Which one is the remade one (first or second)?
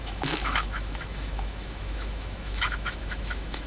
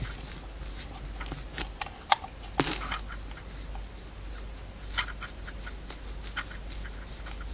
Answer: first